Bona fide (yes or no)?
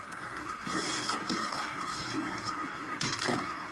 no